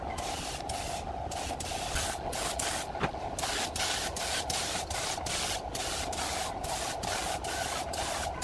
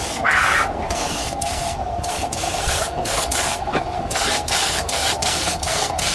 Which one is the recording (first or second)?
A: first